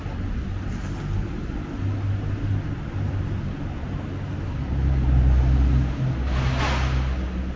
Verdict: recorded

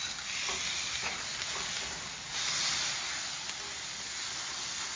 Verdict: recorded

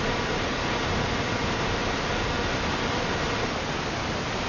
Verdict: recorded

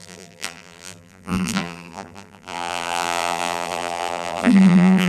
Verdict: remade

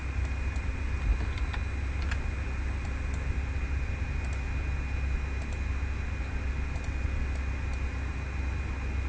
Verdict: recorded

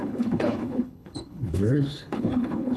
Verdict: remade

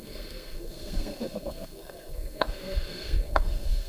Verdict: remade